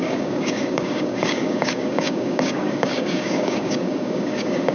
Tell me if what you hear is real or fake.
fake